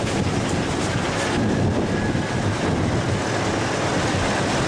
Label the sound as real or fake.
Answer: real